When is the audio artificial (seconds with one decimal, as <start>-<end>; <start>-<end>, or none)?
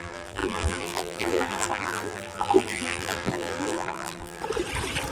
0.0-4.4